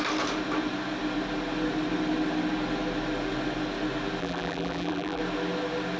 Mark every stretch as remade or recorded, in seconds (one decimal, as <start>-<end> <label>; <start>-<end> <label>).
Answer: 0.0-4.2 recorded; 4.2-5.2 remade; 5.2-6.0 recorded